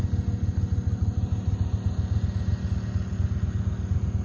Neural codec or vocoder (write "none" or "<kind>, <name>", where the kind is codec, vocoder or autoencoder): none